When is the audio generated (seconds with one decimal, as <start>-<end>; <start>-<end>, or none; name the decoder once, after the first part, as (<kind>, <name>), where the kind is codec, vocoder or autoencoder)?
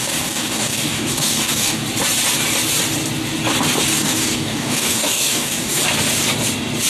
0.0-1.8 (codec, DAC); 4.0-5.8